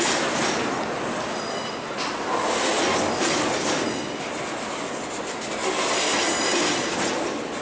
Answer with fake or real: real